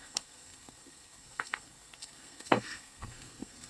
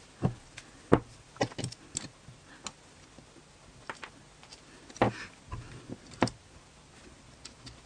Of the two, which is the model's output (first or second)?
first